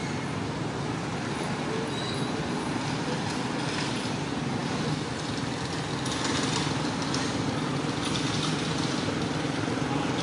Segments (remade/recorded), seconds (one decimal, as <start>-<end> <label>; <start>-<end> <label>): 0.0-10.2 recorded